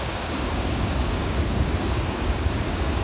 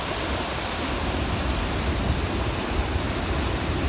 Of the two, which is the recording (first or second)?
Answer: second